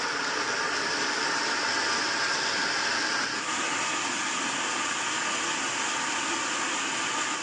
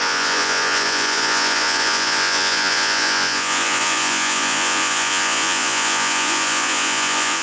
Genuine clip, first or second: first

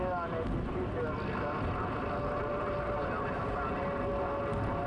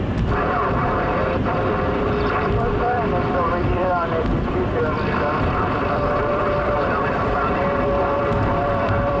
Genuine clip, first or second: first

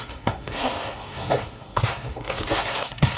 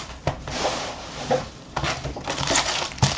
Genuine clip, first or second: second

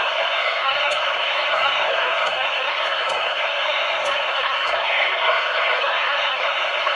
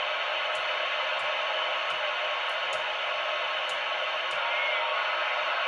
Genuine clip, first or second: second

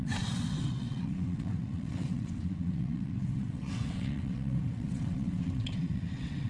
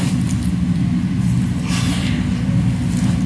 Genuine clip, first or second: second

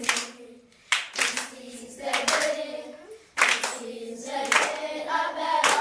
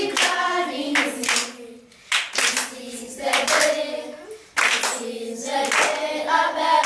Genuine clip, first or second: second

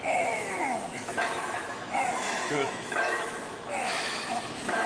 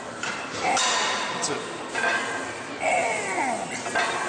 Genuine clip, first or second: second